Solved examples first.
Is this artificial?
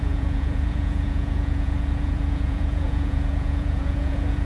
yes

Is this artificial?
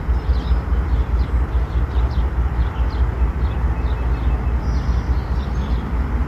no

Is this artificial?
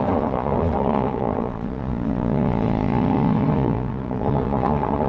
yes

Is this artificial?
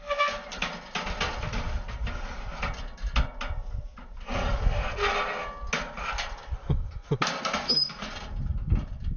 no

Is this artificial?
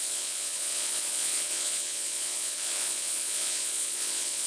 yes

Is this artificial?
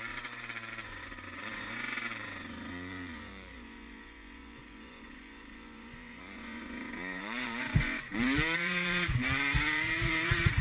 yes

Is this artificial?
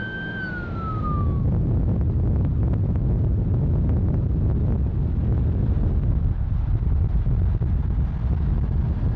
no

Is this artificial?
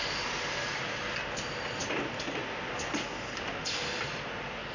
no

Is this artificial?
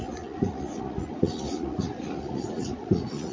yes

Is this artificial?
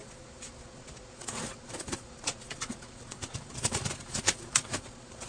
yes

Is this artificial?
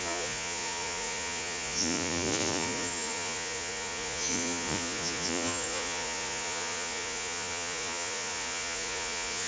yes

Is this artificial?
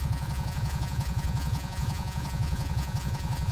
yes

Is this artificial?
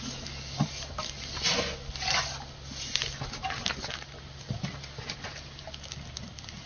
no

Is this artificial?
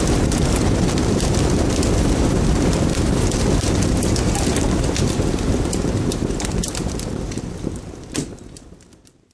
no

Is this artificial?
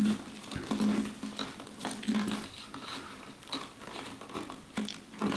no